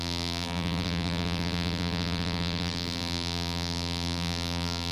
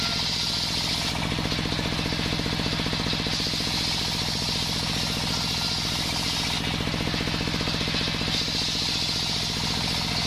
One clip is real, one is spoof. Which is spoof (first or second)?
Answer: first